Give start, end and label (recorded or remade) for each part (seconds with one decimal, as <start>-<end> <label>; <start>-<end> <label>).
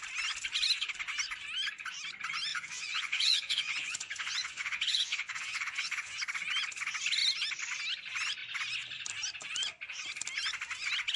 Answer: 0.0-2.5 recorded; 2.5-6.2 remade; 6.2-11.2 recorded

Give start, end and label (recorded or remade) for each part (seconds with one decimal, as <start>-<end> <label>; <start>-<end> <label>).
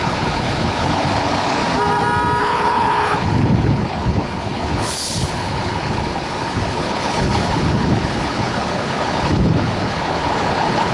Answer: 0.0-1.6 remade; 1.6-2.4 recorded; 2.4-10.9 remade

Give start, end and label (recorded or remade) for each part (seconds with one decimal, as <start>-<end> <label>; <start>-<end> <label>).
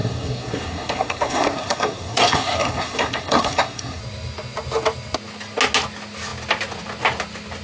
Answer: 0.0-4.0 remade; 4.0-7.6 recorded